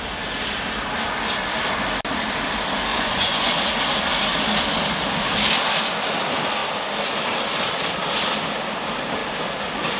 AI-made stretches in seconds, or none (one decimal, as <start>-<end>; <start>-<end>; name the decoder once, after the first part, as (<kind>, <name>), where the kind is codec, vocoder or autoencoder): 2.9-3.5 (vocoder, Vocos)